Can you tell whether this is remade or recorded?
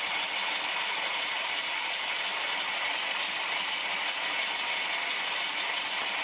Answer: recorded